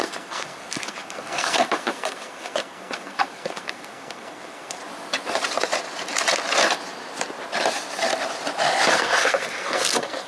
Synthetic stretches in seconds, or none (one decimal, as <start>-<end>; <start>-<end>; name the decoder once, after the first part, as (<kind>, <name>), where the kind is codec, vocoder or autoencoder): 0.0-4.8 (codec, SNAC); 8.9-10.3